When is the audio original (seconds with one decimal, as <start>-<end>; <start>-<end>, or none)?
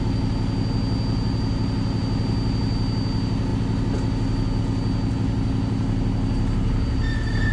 0.0-7.5